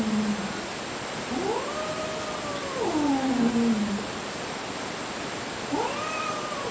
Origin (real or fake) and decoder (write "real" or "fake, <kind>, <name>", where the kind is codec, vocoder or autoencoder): real